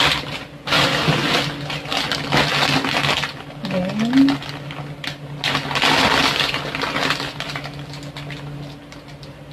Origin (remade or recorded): recorded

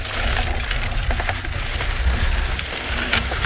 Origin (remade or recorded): recorded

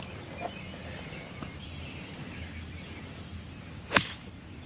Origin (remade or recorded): recorded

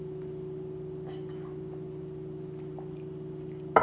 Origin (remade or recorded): recorded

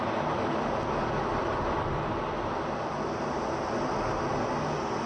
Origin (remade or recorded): recorded